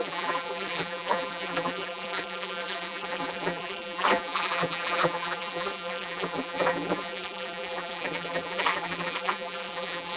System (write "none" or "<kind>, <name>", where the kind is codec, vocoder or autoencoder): vocoder, BigVGAN v2